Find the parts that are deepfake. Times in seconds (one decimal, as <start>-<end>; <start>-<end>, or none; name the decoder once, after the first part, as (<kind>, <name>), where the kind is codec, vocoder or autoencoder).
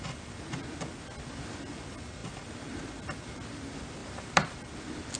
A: 4.0-4.6 (vocoder, BigVGAN v2)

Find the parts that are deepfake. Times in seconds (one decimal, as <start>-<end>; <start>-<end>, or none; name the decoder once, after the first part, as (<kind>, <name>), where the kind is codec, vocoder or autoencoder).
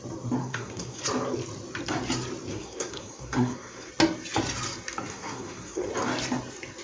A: 0.4-1.0 (codec, SNAC); 2.5-3.9; 5.1-5.9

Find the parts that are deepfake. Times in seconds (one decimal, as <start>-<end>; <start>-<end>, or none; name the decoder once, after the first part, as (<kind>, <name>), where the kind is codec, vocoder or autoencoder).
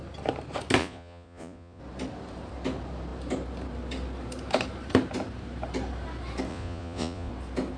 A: 0.8-1.8 (vocoder, Vocos); 6.5-7.3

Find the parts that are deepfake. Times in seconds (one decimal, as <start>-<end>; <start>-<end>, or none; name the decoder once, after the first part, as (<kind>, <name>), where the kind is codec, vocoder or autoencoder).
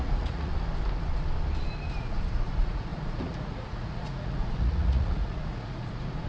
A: 0.0-0.5 (vocoder, Vocos); 2.0-6.3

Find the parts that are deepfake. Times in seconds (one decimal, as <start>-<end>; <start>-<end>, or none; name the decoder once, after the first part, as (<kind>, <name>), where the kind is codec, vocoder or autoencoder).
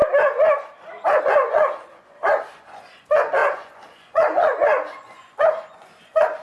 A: 1.2-6.4 (vocoder, Vocos)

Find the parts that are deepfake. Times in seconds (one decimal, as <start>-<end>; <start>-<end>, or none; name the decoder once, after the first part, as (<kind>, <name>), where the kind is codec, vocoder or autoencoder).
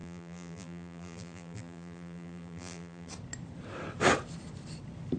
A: 0.0-3.1 (vocoder, BigVGAN v2)